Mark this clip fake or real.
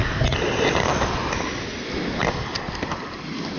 real